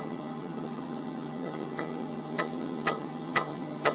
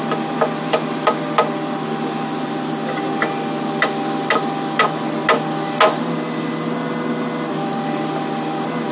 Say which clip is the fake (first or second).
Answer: first